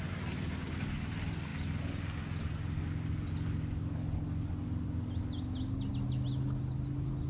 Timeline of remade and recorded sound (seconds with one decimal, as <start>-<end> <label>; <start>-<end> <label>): 0.0-7.3 recorded